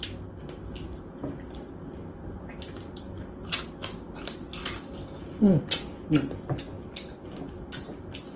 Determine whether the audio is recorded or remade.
recorded